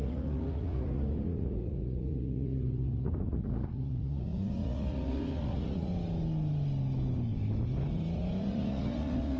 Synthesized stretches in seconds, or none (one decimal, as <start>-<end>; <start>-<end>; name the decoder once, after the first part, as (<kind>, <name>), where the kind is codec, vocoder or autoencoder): 0.0-5.9 (vocoder, Vocos); 8.4-9.4